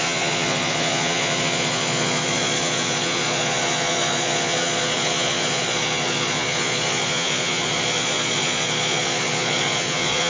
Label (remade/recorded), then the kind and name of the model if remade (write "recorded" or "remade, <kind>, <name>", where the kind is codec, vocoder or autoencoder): remade, vocoder, Vocos